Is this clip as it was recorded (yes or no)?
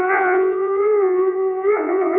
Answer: no